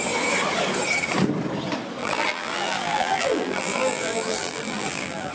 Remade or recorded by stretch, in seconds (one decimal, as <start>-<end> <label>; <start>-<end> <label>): 0.0-2.0 recorded; 2.0-5.3 remade